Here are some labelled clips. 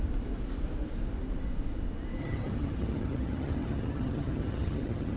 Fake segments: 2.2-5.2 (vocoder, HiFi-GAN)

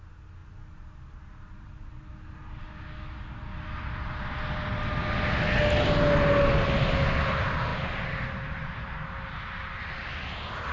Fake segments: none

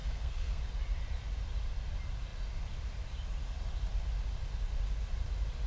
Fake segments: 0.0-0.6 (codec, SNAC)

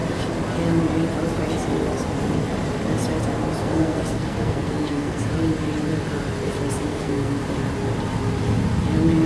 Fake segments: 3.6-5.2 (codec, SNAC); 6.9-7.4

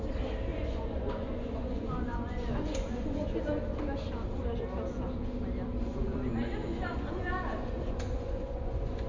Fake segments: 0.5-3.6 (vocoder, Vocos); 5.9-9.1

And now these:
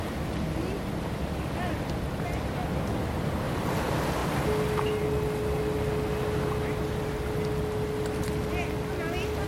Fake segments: none

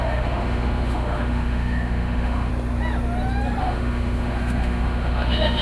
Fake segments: 0.0-2.5 (autoencoder, DAC-VAE); 3.6-5.6

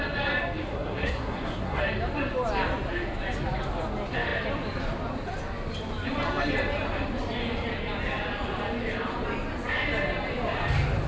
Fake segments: 0.7-1.8 (codec, SNAC)